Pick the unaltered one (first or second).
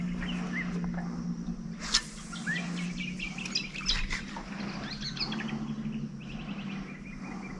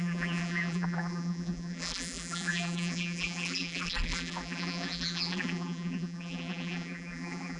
first